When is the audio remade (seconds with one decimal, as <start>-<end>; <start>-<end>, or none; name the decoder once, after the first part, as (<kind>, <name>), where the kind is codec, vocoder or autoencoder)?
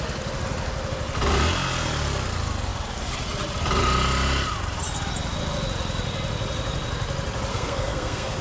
7.5-8.4 (codec, SNAC)